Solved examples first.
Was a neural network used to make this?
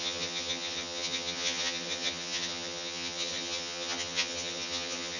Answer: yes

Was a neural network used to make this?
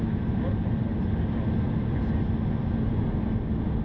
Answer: no